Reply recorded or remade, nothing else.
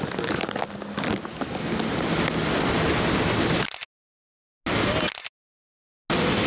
recorded